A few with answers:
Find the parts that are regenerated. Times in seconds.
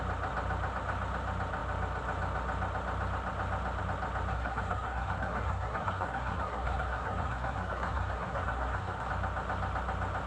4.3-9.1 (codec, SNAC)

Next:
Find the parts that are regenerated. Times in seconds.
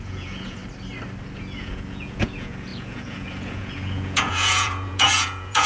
0.0-0.6 (vocoder, Vocos); 1.4-5.7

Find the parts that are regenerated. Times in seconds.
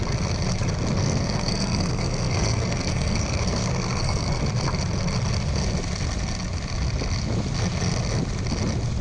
1.0-4.4 (codec, SNAC)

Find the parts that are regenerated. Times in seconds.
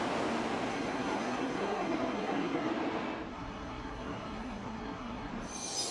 0.7-2.7 (codec, SNAC); 3.3-5.3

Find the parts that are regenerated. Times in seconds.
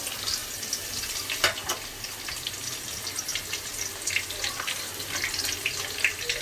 none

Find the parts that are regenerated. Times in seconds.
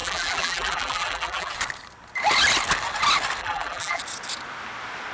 0.0-1.5 (vocoder, BigVGAN v2); 3.4-4.0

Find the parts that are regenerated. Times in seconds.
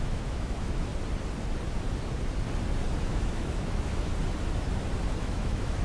0.0-0.9 (autoencoder, DAC-VAE); 3.0-4.1; 5.2-5.8